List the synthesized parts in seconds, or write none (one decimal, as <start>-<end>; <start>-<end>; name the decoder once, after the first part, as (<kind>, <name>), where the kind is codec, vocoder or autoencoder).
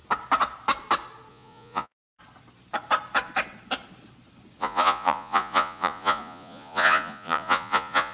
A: 1.3-2.1 (vocoder, Vocos); 4.6-8.1